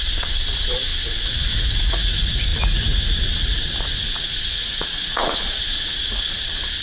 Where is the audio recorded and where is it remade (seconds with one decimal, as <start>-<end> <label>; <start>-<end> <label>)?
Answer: 0.0-6.8 remade

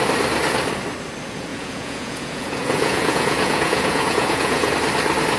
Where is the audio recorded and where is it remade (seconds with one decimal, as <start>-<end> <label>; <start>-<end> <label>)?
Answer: 0.0-1.5 recorded; 1.5-4.7 remade; 4.7-5.4 recorded

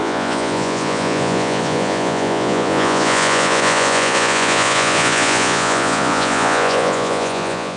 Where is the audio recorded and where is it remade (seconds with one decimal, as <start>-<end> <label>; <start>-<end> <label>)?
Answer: 0.0-7.8 remade

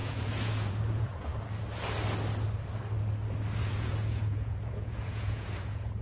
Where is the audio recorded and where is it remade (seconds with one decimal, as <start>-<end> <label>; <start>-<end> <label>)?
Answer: 0.0-1.3 remade; 1.3-3.6 recorded; 3.6-6.0 remade

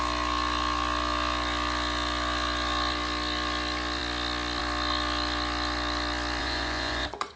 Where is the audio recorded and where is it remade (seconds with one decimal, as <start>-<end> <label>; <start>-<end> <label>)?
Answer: 0.0-6.4 recorded; 6.4-7.4 remade

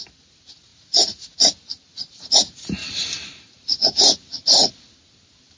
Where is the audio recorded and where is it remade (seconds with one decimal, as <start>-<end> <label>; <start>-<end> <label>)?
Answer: 0.0-0.7 recorded; 0.7-1.3 remade; 1.3-5.6 recorded